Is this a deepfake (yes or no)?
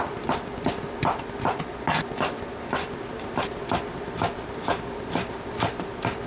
no